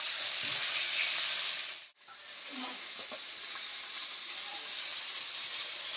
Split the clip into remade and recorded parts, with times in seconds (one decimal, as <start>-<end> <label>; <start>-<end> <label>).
0.0-6.0 recorded